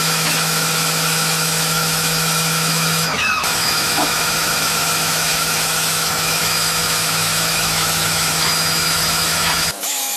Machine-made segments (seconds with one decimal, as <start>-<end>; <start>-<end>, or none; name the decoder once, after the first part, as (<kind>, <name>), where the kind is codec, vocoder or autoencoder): 0.0-10.2 (autoencoder, DAC-VAE)